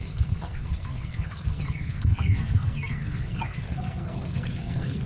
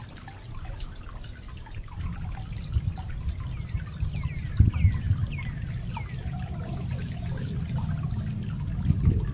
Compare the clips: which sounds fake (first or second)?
first